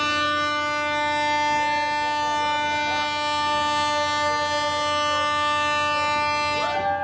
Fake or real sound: real